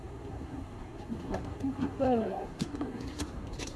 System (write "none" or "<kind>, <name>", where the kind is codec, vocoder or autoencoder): codec, SNAC